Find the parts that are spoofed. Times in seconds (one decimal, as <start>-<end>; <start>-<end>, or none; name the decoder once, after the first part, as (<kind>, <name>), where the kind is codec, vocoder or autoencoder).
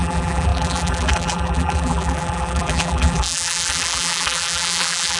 0.0-5.2 (vocoder, BigVGAN v2)